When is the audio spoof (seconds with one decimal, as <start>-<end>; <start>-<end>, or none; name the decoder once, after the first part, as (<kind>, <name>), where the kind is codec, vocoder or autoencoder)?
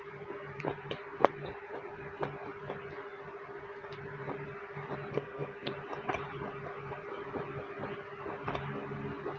5.1-5.7 (codec, SNAC)